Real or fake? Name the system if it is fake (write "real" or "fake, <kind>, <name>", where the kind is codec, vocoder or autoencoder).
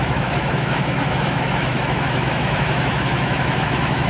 fake, autoencoder, DAC-VAE